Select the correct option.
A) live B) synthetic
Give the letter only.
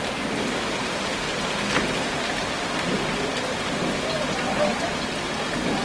A